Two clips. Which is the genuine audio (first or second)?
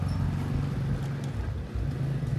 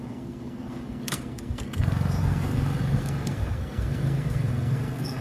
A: first